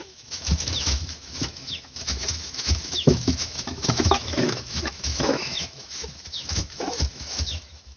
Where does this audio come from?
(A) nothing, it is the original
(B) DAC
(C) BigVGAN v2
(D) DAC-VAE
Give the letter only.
D